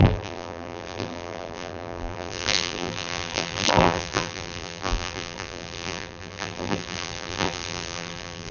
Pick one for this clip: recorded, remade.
remade